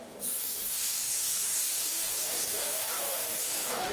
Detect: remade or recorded remade